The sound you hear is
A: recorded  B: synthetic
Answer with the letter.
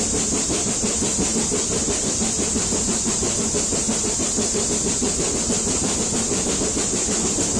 A